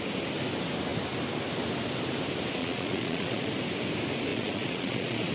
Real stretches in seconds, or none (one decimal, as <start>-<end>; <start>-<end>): 0.0-2.6; 3.5-4.3